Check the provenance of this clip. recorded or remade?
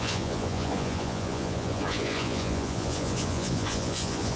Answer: remade